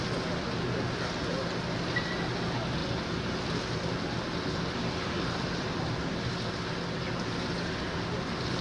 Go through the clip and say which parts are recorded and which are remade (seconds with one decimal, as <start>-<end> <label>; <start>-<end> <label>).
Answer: 0.0-8.6 recorded